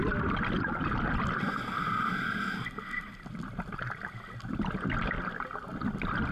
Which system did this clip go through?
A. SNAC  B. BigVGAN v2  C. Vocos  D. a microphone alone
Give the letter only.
D